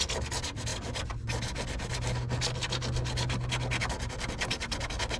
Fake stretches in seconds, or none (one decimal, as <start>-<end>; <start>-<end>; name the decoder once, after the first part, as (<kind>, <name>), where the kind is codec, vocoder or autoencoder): none